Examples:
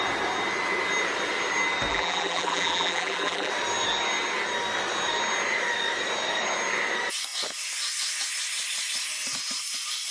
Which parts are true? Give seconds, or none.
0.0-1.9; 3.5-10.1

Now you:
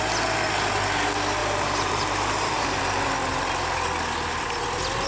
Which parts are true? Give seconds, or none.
0.0-1.4; 2.8-5.1

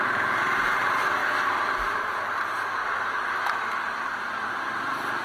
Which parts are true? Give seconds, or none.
0.0-1.2; 2.3-5.2